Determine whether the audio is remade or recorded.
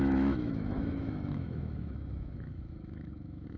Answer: remade